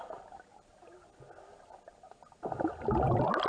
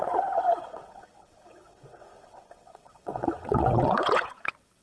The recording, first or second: first